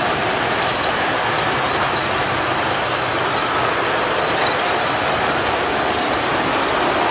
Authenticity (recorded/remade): recorded